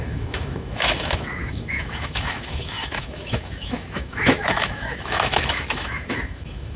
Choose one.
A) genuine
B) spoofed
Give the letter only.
B